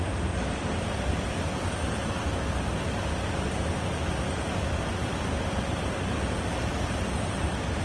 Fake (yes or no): no